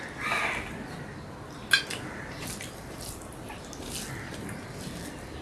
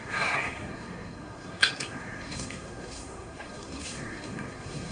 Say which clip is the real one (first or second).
first